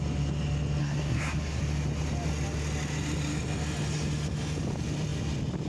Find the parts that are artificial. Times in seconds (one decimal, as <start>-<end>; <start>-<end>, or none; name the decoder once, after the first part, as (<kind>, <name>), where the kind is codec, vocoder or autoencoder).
0.8-1.6 (codec, SNAC)